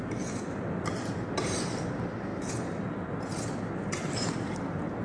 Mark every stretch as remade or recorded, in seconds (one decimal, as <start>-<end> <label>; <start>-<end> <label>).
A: 0.0-5.0 recorded